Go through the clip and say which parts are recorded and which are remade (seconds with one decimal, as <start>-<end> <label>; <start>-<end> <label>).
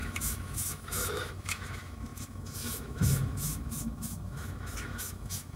0.0-5.6 remade